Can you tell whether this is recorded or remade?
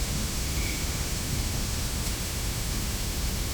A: remade